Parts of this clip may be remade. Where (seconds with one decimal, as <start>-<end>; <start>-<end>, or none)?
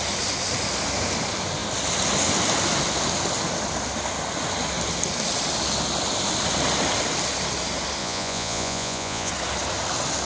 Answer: 8.0-9.3